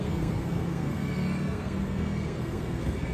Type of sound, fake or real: fake